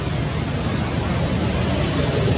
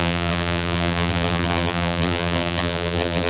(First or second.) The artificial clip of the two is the second